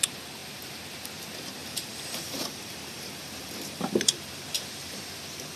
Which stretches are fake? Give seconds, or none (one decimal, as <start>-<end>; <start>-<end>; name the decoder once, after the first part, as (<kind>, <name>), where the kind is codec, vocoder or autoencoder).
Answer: 1.6-5.0 (vocoder, BigVGAN v2)